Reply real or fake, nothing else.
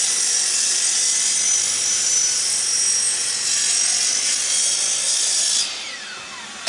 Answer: real